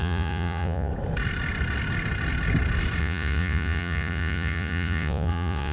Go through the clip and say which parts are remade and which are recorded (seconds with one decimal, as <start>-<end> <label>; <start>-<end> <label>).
0.0-0.9 remade; 0.9-3.0 recorded; 3.0-5.7 remade